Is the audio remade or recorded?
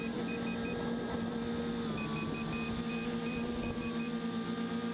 recorded